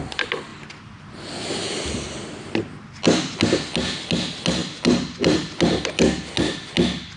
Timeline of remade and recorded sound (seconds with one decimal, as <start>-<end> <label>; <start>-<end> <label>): 0.0-7.2 recorded